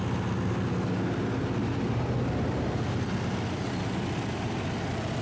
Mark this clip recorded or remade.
recorded